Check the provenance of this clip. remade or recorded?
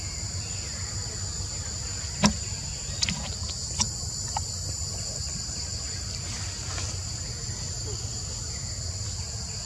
recorded